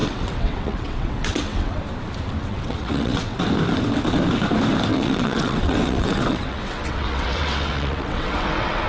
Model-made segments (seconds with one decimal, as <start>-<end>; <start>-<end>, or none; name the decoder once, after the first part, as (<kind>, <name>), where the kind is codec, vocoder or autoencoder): 0.0-1.8 (vocoder, WaveNeXt); 2.4-3.4; 4.9-8.9